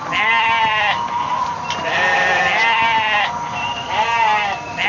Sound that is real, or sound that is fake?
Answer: real